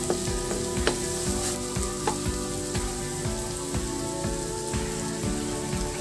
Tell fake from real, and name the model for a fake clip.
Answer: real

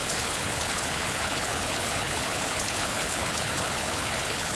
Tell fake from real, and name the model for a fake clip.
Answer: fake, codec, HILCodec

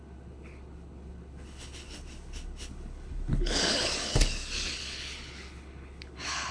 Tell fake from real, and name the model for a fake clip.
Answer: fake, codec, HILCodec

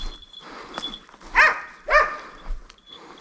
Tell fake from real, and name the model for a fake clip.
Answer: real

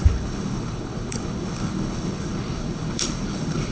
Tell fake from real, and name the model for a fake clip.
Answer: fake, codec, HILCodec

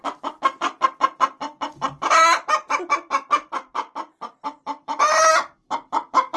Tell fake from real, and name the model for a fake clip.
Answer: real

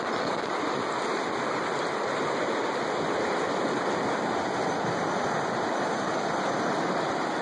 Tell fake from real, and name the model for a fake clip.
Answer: real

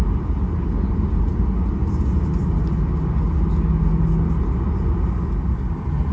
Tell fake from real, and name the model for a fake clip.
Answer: real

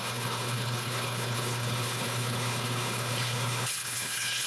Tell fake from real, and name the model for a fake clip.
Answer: fake, codec, HILCodec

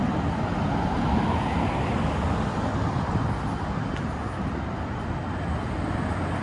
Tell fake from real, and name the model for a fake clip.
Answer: real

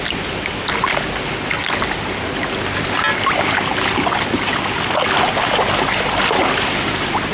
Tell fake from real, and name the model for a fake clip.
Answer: real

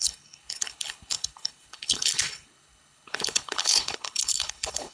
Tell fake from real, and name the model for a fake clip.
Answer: fake, codec, HILCodec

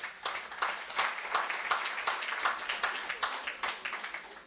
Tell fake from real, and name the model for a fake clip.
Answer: real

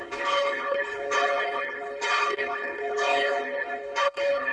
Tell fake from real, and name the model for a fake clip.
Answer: fake, codec, HILCodec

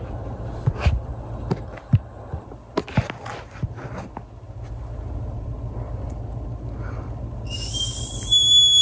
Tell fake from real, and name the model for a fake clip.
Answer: real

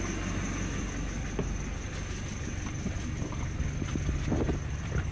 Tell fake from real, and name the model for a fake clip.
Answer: real